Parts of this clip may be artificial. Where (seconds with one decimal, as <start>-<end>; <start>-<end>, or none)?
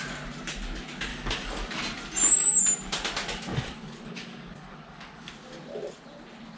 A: 1.1-1.8; 3.5-5.3